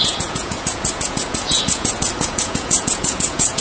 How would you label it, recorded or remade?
remade